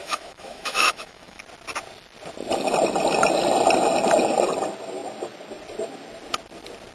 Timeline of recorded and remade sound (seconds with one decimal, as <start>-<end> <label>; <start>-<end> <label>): 0.0-1.4 remade; 1.4-6.9 recorded